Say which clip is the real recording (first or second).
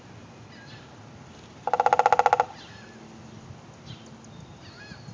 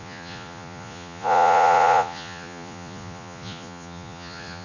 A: first